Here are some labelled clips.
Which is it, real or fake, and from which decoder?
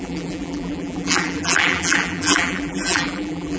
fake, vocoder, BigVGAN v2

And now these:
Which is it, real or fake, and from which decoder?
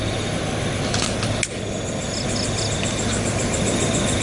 real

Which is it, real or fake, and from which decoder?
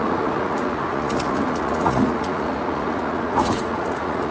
fake, vocoder, Vocos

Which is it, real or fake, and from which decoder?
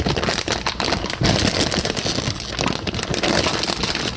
real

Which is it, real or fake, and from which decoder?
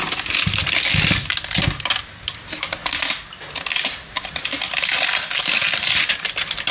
real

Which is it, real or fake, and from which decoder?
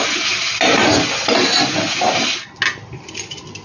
real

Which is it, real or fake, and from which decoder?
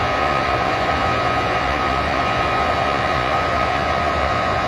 fake, vocoder, Vocos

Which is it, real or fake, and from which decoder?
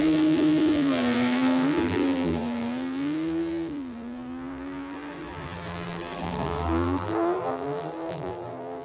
fake, vocoder, BigVGAN v2